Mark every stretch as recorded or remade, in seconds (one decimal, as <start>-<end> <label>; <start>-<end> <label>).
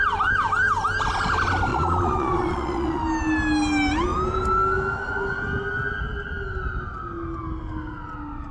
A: 0.0-1.7 recorded; 1.7-3.0 remade; 3.0-8.5 recorded